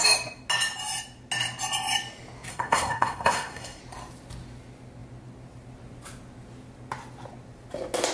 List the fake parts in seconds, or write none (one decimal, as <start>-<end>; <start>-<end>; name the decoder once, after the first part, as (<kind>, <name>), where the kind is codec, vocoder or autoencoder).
2.5-3.8 (codec, SNAC)